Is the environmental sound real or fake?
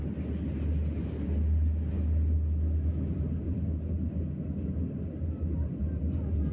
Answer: real